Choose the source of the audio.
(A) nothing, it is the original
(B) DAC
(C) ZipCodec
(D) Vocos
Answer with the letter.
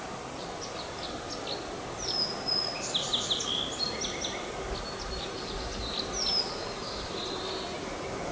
A